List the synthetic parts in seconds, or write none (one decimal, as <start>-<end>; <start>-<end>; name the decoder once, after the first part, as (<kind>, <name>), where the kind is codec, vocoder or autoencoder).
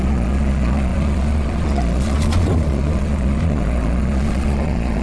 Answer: 0.0-5.0 (vocoder, Vocos)